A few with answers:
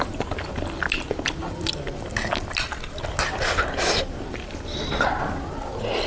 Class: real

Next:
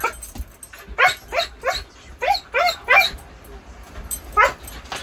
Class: real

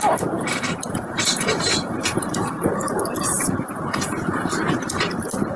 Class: fake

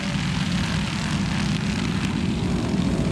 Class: real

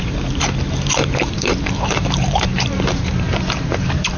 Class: fake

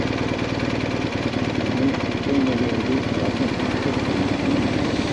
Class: fake